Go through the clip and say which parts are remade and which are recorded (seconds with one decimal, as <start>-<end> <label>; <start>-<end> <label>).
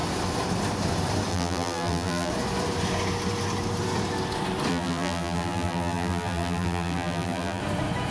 0.0-1.3 recorded; 1.3-2.3 remade; 2.3-4.7 recorded; 4.7-7.6 remade; 7.6-8.1 recorded